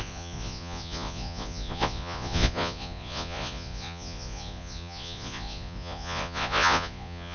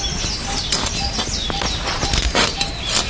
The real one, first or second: second